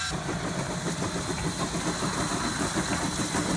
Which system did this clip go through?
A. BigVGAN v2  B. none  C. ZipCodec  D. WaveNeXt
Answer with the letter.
B